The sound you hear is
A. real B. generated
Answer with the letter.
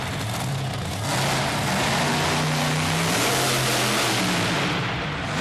A